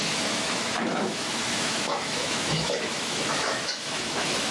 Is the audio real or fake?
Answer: fake